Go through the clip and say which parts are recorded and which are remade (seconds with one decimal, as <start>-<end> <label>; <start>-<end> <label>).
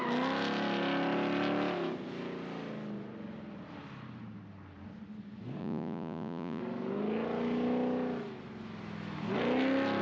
0.0-5.6 recorded; 5.6-6.6 remade; 6.6-10.0 recorded